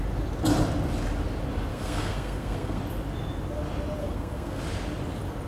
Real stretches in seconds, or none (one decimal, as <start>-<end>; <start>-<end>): 0.0-1.7; 2.8-4.0; 4.6-5.5